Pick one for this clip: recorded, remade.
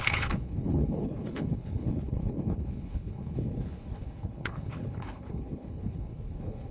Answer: remade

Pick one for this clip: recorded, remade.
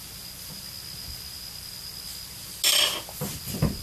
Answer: recorded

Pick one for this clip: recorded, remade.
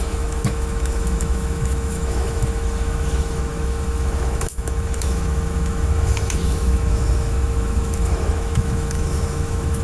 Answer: remade